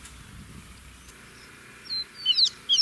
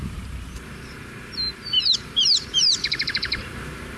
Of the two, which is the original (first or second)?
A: first